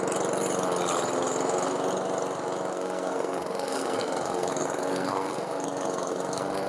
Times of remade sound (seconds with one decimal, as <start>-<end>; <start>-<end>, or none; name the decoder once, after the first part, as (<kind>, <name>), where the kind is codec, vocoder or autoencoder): 2.7-6.7 (codec, SNAC)